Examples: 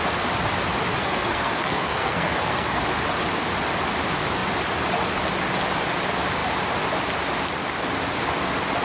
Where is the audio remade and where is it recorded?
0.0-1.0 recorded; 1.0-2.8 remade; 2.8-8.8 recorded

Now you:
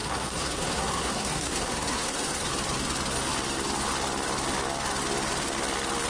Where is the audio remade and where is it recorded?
0.0-2.5 remade; 2.5-6.1 recorded

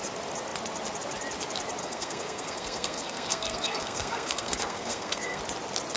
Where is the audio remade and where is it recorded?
0.0-1.8 recorded; 1.8-5.4 remade; 5.4-6.0 recorded

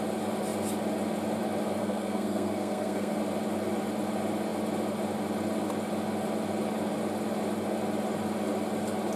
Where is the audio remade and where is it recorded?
0.0-1.8 recorded; 1.8-3.2 remade; 3.2-9.2 recorded